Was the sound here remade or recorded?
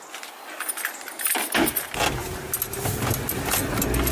recorded